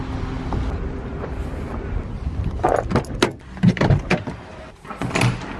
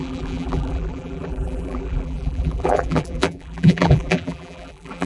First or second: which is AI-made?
second